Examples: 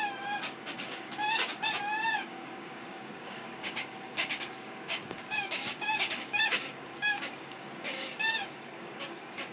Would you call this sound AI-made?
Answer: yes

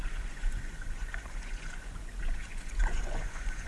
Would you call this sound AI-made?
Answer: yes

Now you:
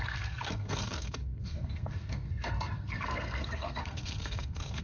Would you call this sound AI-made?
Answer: yes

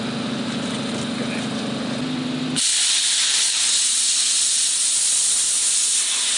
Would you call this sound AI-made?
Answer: no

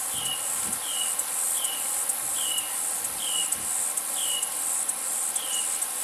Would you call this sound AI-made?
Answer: no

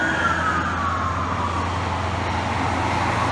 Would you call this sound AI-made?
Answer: no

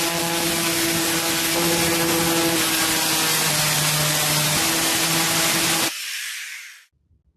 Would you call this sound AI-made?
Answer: no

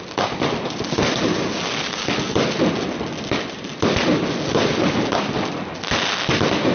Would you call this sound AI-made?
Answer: no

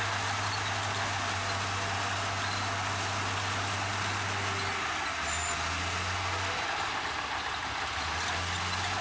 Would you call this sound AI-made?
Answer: no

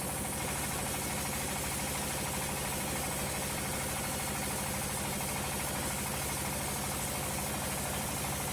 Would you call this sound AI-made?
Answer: no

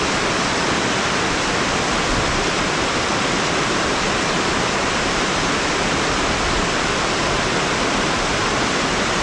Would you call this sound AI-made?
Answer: no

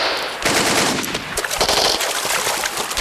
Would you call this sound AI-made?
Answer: no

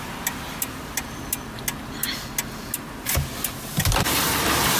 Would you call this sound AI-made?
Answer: no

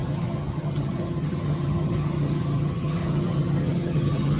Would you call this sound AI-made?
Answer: yes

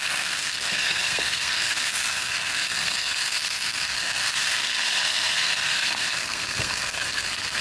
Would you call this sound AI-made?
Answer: yes